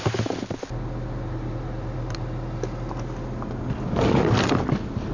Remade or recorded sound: recorded